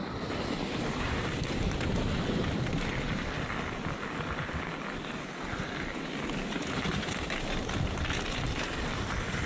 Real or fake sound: real